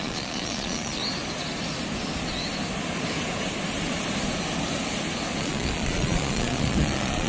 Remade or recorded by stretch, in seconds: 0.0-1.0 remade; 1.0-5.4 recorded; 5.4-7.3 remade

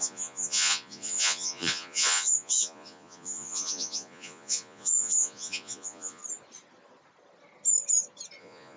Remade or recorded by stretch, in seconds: 0.0-6.2 remade; 6.2-8.4 recorded; 8.4-8.8 remade

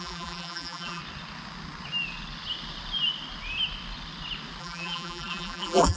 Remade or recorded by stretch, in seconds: 0.0-1.0 remade; 1.0-4.6 recorded; 4.6-6.0 remade